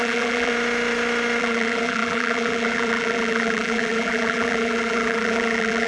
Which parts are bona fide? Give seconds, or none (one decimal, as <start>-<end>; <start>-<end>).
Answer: 0.5-1.4